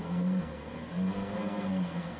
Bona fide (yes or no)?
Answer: no